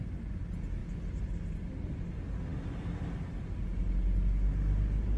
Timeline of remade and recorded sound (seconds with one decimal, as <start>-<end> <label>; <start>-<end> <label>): 0.0-5.2 recorded